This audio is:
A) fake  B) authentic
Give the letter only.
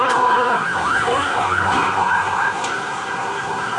A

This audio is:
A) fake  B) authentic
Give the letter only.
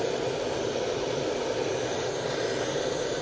B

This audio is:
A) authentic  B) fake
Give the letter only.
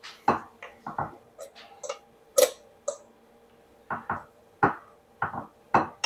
A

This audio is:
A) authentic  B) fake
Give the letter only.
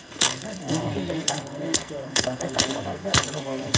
B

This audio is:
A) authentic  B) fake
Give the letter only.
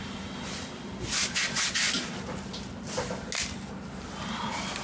A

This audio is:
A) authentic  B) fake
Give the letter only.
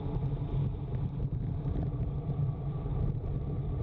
A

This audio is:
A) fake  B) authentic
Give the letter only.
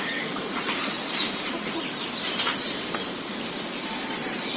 A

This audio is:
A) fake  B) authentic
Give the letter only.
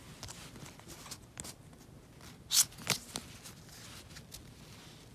B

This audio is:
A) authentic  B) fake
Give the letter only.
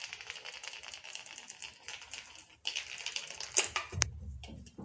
A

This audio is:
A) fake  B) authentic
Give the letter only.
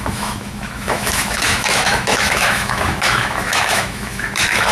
A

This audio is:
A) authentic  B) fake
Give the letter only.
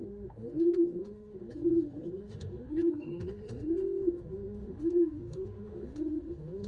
B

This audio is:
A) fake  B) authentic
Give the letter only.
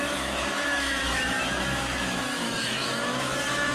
A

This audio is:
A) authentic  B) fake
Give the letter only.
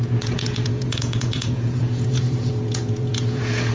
B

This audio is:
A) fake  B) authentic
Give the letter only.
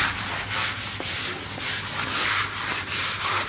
B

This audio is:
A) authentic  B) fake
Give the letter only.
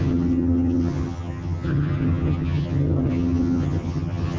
B